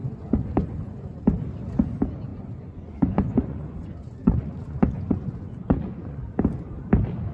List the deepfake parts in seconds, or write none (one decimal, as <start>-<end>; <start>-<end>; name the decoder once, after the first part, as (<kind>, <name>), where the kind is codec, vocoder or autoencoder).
0.0-1.2 (vocoder, Vocos); 2.3-6.2